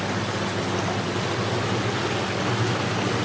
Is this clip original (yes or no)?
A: yes